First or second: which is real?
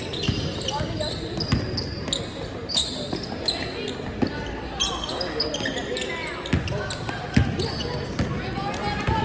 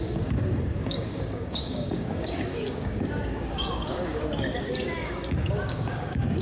first